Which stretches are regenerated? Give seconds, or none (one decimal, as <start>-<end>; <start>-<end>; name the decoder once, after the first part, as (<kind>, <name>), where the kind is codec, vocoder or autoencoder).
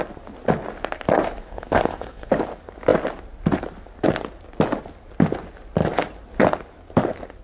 1.4-2.3 (codec, SNAC)